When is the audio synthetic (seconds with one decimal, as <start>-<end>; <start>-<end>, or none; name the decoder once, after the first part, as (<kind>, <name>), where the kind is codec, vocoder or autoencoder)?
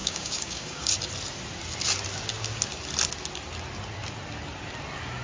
0.0-0.9 (codec, DAC)